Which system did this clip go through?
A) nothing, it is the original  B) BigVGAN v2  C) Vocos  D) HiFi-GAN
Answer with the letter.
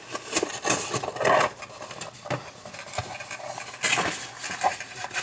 A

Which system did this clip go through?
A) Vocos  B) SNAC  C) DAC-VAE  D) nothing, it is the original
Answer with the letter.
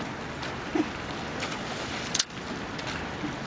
D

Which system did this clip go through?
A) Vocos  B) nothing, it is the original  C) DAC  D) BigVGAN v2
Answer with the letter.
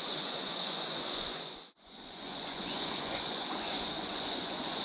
A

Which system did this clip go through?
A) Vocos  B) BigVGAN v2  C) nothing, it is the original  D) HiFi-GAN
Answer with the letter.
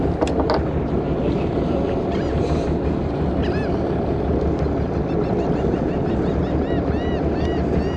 C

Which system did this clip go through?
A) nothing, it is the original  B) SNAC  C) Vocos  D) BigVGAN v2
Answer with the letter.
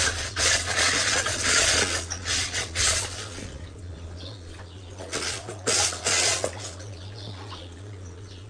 C